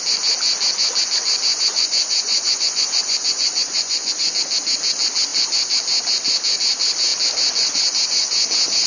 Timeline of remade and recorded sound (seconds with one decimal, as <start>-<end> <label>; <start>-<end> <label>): 0.0-1.5 recorded; 1.5-4.3 remade; 4.3-8.9 recorded